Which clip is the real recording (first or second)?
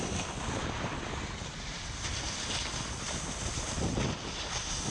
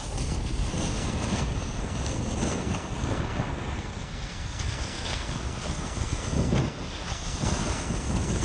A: first